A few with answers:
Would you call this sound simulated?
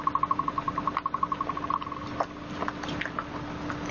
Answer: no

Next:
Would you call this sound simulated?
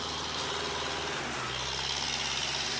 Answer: no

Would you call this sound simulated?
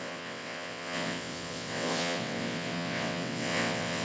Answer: yes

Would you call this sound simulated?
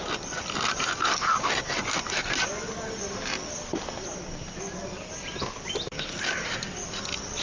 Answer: no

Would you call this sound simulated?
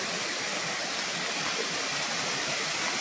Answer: no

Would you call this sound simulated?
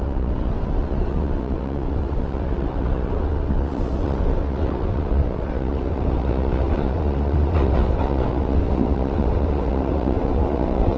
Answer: yes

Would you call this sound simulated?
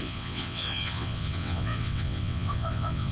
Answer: yes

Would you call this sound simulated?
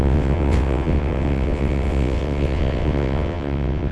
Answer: yes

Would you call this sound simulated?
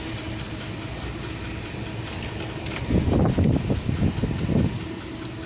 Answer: no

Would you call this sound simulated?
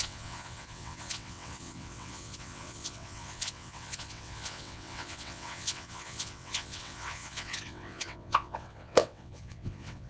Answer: yes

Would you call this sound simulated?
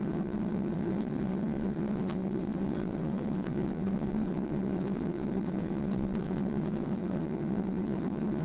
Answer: yes